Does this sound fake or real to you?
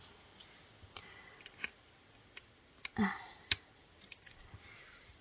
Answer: real